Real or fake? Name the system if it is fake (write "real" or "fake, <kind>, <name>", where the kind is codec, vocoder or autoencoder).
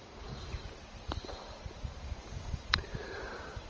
fake, vocoder, BigVGAN v2